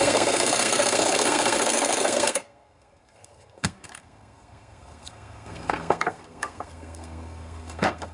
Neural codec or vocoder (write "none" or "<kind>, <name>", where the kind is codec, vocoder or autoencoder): codec, SNAC